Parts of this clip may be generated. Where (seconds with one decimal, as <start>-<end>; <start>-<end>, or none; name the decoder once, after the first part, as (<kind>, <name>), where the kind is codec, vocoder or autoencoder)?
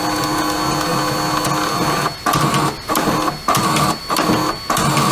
none